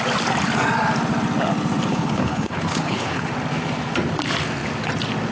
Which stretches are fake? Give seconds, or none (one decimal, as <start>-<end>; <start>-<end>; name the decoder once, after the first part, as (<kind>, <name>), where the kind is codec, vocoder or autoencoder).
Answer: 1.9-3.3 (codec, HILCodec)